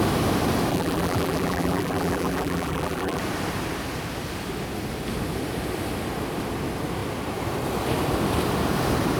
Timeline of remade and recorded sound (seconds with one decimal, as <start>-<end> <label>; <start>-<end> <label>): 0.0-0.7 recorded; 0.7-3.2 remade; 3.2-9.2 recorded